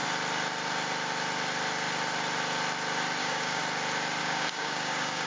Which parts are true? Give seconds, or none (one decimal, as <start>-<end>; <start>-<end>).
0.0-3.2; 3.6-4.2